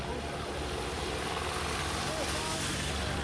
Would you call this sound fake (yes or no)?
no